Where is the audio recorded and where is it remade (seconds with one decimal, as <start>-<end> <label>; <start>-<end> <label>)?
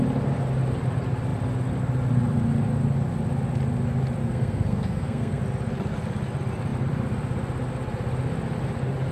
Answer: 0.0-4.2 recorded; 4.2-5.4 remade; 5.4-9.1 recorded